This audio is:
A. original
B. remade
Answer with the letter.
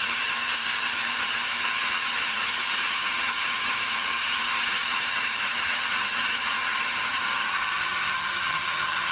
B